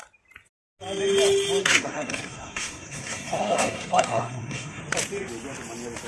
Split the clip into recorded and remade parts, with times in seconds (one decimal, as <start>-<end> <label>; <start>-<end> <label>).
0.0-1.6 recorded; 1.6-4.8 remade; 4.8-6.1 recorded